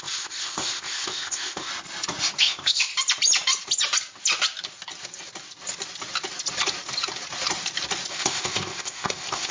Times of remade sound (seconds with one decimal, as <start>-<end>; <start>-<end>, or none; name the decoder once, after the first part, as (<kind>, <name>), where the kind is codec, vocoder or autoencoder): 0.0-1.7 (codec, ZipCodec); 2.4-2.9; 8.1-9.5